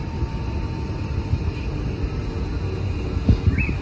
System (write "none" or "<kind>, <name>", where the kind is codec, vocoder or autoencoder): none